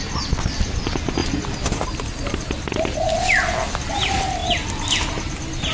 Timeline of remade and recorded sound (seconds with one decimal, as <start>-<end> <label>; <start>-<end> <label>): 0.0-5.7 recorded